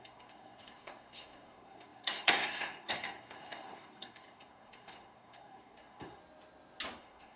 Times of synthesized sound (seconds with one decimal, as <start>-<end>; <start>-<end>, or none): 0.0-6.2; 7.0-7.4